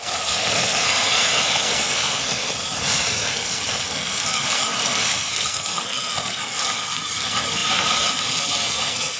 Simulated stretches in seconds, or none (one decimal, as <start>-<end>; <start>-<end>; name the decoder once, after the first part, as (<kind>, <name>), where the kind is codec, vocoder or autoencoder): 0.0-9.2 (codec, SNAC)